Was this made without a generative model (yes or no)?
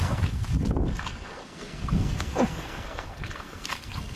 no